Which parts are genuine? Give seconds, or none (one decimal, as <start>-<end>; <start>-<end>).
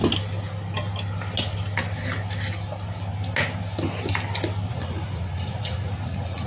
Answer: 0.0-4.7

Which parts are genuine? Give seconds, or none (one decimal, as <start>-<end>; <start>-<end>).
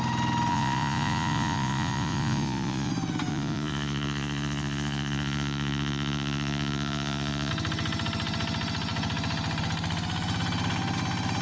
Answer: 0.0-0.5; 2.9-3.3; 7.5-11.4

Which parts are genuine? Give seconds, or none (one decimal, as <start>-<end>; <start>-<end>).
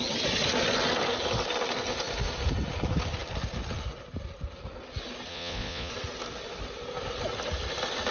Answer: 0.0-5.3; 5.9-8.1